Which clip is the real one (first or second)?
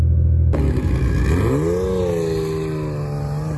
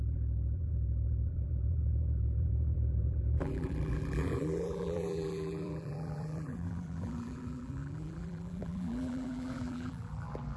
first